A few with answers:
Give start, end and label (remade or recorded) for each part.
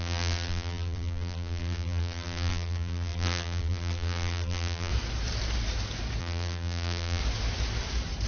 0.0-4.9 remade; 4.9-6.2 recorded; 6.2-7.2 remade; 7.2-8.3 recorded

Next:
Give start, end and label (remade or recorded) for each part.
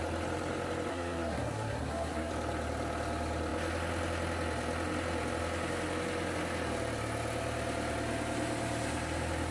0.0-0.9 recorded; 0.9-2.3 remade; 2.3-9.5 recorded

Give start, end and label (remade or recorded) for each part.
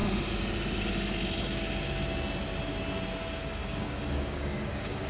0.0-3.6 recorded; 3.6-5.1 remade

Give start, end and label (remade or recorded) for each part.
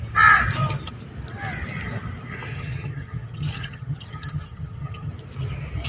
0.0-2.5 recorded; 2.5-5.1 remade; 5.1-5.9 recorded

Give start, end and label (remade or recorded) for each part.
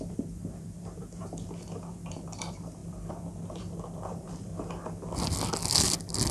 0.0-4.5 remade; 4.5-5.7 recorded; 5.7-6.3 remade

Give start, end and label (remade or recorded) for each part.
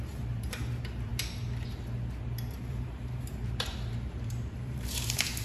0.0-1.1 remade; 1.1-2.5 recorded; 2.5-5.4 remade